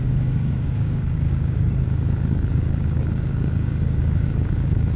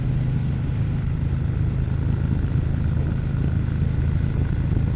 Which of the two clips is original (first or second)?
second